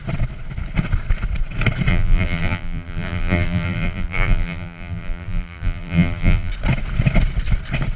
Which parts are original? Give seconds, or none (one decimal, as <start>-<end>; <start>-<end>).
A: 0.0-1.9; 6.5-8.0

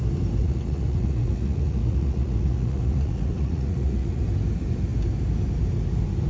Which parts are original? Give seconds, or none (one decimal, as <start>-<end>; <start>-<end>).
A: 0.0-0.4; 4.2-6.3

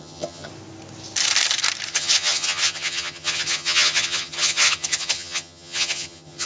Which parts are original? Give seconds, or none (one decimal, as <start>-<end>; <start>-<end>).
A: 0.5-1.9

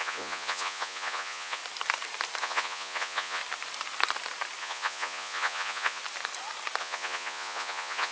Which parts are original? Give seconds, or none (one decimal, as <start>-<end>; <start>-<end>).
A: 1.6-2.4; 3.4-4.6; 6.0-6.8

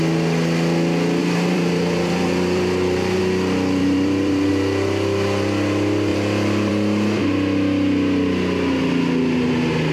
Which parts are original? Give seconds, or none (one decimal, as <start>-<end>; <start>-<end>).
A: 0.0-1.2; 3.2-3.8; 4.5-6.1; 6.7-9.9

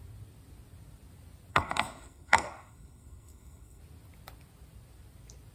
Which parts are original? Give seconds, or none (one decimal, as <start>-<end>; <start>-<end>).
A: 0.0-1.5; 3.8-5.5